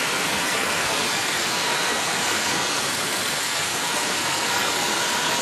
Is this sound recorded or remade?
remade